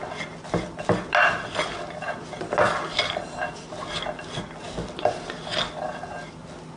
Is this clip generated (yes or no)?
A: no